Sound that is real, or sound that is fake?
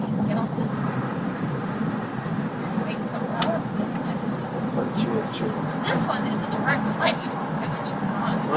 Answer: real